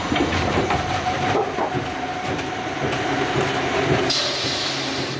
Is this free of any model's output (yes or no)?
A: no